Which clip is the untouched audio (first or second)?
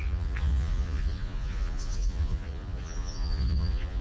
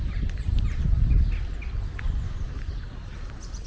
second